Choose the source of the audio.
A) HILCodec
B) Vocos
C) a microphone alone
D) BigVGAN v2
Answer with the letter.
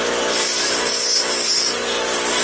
C